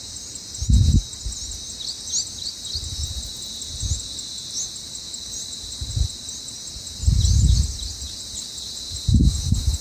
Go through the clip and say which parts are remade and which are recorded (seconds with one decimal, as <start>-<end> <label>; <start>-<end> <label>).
0.0-9.8 recorded